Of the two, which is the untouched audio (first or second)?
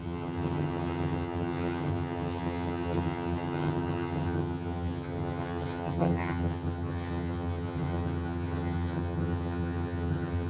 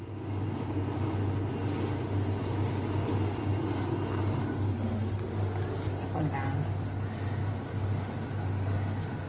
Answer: second